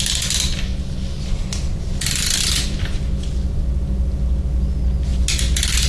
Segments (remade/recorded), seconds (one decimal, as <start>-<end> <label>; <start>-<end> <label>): 0.0-0.7 remade; 0.7-1.2 recorded; 1.2-5.1 remade; 5.1-5.9 recorded